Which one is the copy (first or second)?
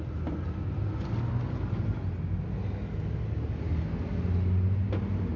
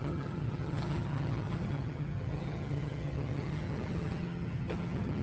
second